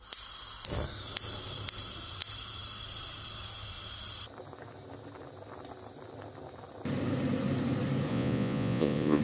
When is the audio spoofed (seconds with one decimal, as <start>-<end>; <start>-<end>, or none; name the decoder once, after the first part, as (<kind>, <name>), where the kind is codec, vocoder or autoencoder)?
8.1-9.2 (vocoder, Vocos)